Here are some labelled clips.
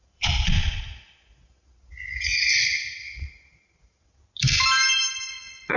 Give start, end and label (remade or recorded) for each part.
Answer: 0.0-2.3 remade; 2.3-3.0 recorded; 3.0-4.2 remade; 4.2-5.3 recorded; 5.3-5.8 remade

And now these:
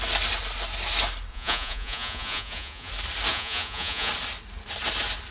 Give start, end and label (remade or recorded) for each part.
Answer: 0.0-1.3 recorded; 1.3-2.9 remade; 2.9-3.3 recorded; 3.3-4.1 remade; 4.1-5.3 recorded

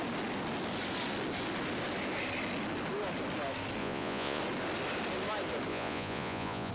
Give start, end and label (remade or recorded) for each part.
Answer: 0.0-3.8 recorded; 3.8-4.4 remade; 4.4-5.7 recorded; 5.7-6.7 remade

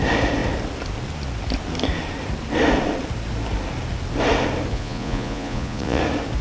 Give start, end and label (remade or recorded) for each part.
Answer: 0.0-4.7 recorded; 4.7-6.0 remade; 6.0-6.4 recorded

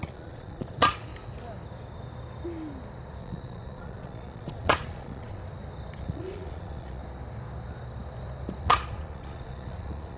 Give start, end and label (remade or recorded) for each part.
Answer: 0.0-1.1 remade; 1.1-3.2 recorded; 3.2-5.4 remade; 5.4-6.0 recorded; 6.0-7.0 remade; 7.0-8.6 recorded; 8.6-10.2 remade

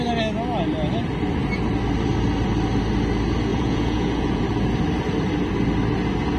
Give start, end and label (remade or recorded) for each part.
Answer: 0.0-3.5 recorded; 3.5-4.4 remade; 4.4-6.4 recorded

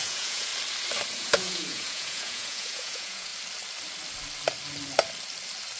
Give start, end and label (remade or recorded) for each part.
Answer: 0.0-0.5 remade; 0.5-1.1 recorded; 1.1-3.3 remade; 3.3-5.8 recorded

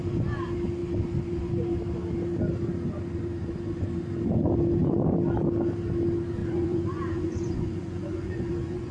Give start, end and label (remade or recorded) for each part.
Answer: 0.0-6.4 recorded; 6.4-8.9 remade